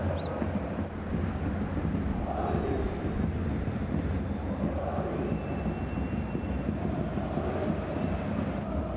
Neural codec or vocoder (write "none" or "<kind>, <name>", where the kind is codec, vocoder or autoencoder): none